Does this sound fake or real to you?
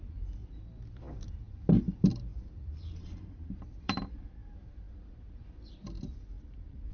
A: fake